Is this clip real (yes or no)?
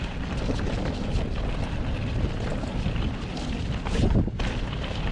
yes